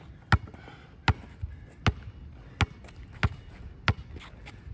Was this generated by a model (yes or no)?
no